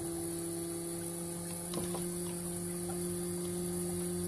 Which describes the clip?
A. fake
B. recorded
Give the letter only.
B